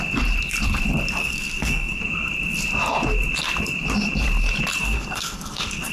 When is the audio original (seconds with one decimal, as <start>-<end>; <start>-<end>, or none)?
0.0-1.2; 2.0-4.8